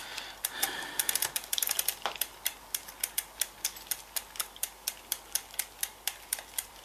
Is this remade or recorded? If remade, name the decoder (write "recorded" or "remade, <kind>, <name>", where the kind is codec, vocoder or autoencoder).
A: recorded